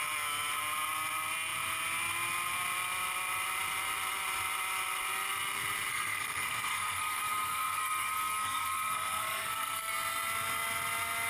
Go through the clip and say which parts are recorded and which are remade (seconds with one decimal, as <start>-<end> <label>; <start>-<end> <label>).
0.0-5.9 recorded; 5.9-9.9 remade; 9.9-11.3 recorded